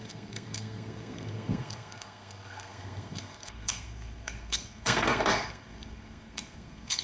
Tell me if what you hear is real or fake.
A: fake